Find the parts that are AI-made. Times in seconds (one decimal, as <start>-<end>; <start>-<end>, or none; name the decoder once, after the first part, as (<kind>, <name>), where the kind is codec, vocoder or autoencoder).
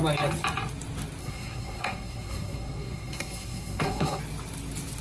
1.2-4.2 (codec, SNAC)